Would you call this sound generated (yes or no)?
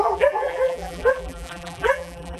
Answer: yes